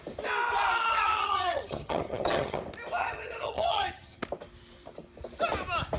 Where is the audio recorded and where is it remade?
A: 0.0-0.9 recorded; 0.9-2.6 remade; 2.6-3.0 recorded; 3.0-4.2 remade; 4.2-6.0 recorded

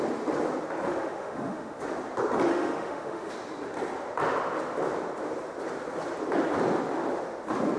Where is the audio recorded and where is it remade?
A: 0.0-0.9 recorded; 0.9-1.8 remade; 1.8-2.5 recorded; 2.5-3.3 remade; 3.3-7.8 recorded

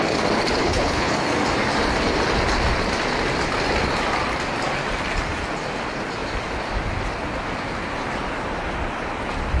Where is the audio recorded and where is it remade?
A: 0.0-0.6 recorded; 0.6-1.1 remade; 1.1-9.6 recorded

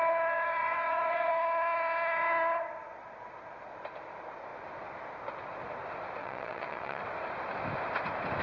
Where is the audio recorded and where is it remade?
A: 0.0-0.6 recorded; 0.6-1.3 remade; 1.3-6.2 recorded; 6.2-7.0 remade; 7.0-8.4 recorded

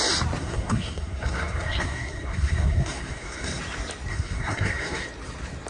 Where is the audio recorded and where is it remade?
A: 0.0-0.4 recorded; 0.4-3.6 remade; 3.6-4.1 recorded; 4.1-5.1 remade; 5.1-5.7 recorded